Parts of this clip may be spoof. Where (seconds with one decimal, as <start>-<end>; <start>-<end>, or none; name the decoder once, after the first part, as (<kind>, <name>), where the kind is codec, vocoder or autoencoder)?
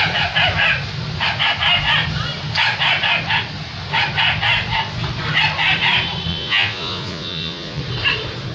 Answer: 6.3-7.8 (vocoder, Vocos)